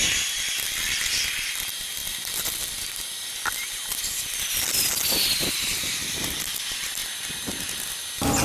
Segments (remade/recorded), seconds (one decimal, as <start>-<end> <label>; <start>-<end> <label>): 0.0-7.0 remade; 7.0-8.4 recorded